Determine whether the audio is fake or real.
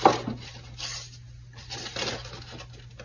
real